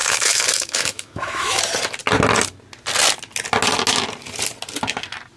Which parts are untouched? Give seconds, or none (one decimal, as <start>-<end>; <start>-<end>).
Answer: 1.6-5.4

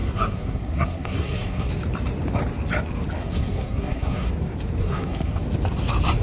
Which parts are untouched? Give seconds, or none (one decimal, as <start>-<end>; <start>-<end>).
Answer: 1.7-3.2; 4.3-4.8; 5.4-6.2

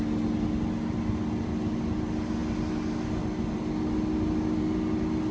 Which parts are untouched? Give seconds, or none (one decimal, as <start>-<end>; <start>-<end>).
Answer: 0.0-5.3

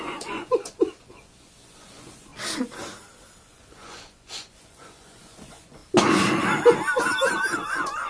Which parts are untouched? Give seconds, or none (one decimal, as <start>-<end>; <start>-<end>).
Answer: 2.3-3.4; 5.8-7.3